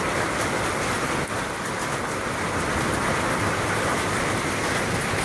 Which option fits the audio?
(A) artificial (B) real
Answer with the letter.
B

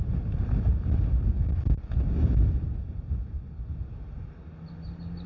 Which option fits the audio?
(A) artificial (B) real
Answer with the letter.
B